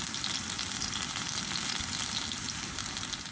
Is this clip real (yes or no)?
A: yes